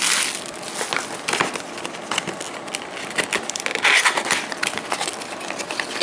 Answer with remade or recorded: recorded